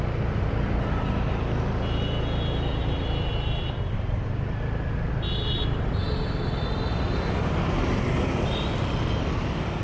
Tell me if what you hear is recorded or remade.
recorded